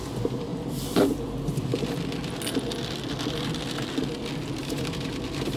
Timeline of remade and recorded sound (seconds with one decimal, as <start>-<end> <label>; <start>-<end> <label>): 0.0-0.5 recorded; 0.5-1.6 remade; 1.6-4.6 recorded; 4.6-5.1 remade; 5.1-5.6 recorded